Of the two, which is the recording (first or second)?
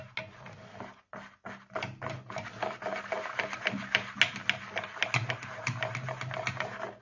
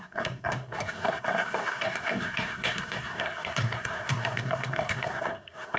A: first